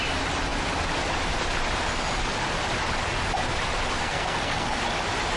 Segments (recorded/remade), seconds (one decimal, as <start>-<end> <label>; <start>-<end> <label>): 0.0-4.0 recorded; 4.0-4.8 remade; 4.8-5.4 recorded